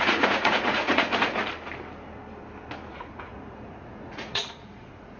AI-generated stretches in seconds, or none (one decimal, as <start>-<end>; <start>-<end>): 0.0-1.4; 2.9-5.2